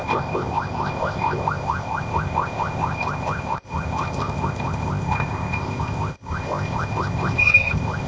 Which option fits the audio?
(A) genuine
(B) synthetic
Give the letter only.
B